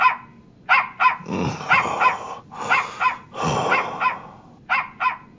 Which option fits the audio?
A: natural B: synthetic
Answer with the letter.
A